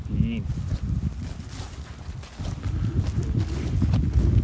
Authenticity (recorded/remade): recorded